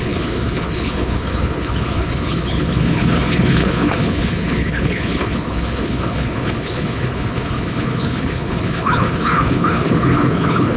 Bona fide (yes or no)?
no